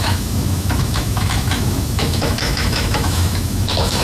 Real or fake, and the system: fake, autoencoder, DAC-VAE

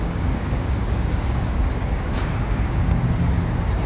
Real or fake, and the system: fake, codec, DAC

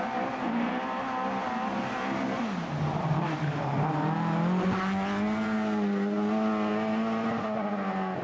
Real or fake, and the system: real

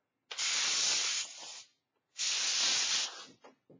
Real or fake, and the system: real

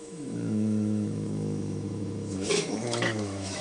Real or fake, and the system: fake, autoencoder, DAC-VAE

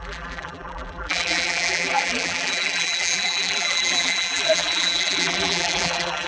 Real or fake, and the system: fake, vocoder, BigVGAN v2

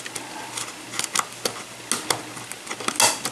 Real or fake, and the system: real